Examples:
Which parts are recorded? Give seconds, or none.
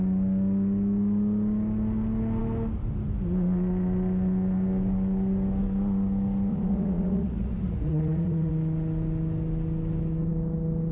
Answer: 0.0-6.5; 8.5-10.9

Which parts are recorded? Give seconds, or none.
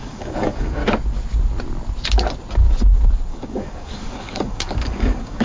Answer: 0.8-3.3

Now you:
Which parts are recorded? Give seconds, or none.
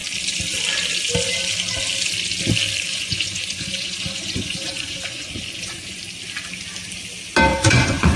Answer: 0.0-2.9; 6.0-7.5